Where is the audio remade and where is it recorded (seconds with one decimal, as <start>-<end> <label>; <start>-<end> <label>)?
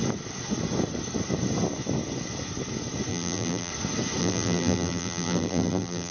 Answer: 0.0-3.1 recorded; 3.1-3.7 remade; 3.7-4.2 recorded; 4.2-6.1 remade